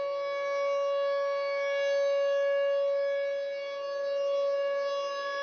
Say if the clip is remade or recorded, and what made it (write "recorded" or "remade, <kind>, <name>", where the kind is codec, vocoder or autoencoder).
recorded